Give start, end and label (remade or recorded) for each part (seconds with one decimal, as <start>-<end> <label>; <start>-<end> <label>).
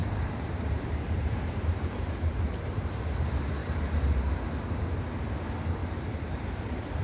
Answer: 0.0-3.0 remade; 3.0-3.6 recorded; 3.6-4.4 remade; 4.4-5.8 recorded; 5.8-6.6 remade; 6.6-7.0 recorded